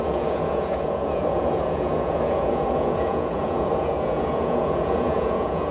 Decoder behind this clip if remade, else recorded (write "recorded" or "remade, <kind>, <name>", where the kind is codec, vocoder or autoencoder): remade, vocoder, Vocos